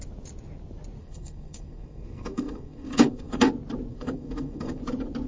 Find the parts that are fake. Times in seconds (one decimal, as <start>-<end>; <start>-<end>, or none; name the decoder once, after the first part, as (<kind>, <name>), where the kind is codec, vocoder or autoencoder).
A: 1.0-3.5 (codec, SNAC); 3.9-4.8

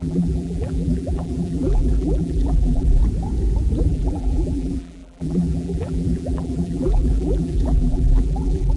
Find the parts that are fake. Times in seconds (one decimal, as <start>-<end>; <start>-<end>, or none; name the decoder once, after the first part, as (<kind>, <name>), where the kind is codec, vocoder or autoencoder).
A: 0.0-3.0 (vocoder, BigVGAN v2); 3.8-8.8